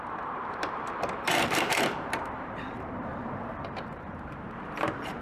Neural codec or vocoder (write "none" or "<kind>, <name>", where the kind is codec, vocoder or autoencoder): vocoder, BigVGAN v2